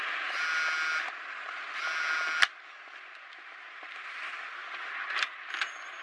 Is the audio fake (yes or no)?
no